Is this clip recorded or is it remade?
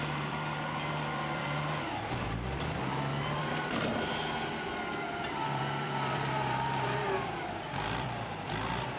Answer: remade